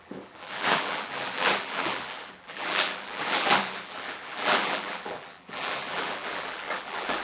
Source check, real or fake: fake